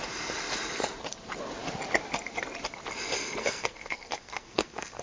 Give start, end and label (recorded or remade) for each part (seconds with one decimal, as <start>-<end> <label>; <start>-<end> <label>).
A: 0.0-3.4 recorded; 3.4-5.0 remade